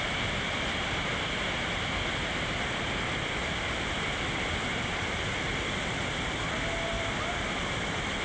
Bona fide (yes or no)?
no